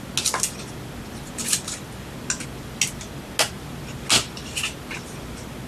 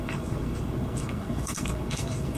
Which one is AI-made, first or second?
second